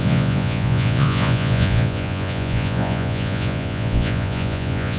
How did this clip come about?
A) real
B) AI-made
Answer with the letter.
B